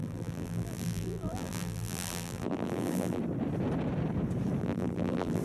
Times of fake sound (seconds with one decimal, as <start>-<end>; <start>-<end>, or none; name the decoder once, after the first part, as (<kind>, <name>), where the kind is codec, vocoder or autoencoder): 0.0-3.2 (vocoder, BigVGAN v2); 4.6-5.4